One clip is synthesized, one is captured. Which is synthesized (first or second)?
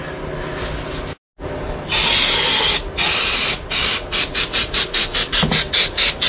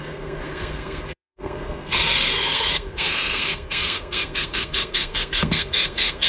second